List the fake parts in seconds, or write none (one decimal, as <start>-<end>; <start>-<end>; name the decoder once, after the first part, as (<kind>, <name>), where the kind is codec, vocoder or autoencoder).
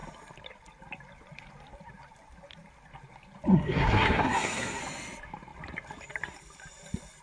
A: 3.5-4.8 (codec, SNAC)